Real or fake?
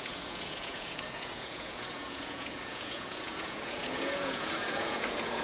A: fake